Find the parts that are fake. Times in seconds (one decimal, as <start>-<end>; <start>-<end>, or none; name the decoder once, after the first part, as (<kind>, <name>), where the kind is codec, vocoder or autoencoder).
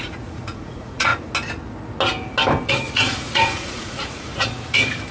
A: 0.0-1.1 (vocoder, Vocos); 2.7-4.3